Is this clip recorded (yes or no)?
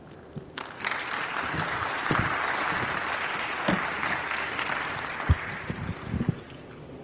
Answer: yes